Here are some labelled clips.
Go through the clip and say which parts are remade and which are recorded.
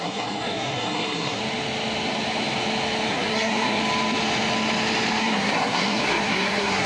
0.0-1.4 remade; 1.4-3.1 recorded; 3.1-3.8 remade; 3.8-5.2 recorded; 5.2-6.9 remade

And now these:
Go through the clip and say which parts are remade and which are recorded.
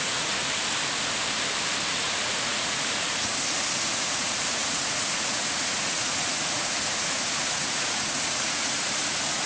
0.0-0.4 remade; 0.4-1.9 recorded; 1.9-3.3 remade; 3.3-3.8 recorded; 3.8-9.5 remade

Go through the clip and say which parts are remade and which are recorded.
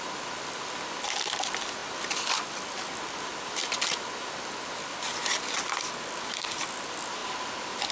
0.0-7.9 recorded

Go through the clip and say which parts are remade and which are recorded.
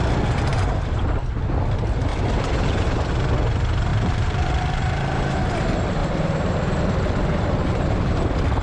0.0-0.5 recorded; 0.5-1.4 remade; 1.4-2.1 recorded; 2.1-3.1 remade; 3.1-3.9 recorded; 3.9-4.8 remade; 4.8-6.0 recorded; 6.0-6.6 remade; 6.6-8.6 recorded